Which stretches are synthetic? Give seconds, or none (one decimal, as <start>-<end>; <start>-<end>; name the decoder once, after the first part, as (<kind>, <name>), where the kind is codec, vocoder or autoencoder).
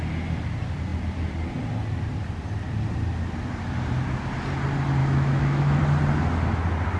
5.0-5.8 (autoencoder, DAC-VAE)